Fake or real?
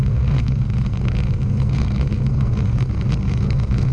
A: fake